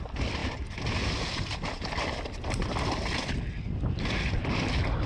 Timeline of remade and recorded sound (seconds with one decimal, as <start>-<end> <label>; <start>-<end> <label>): 0.0-5.1 recorded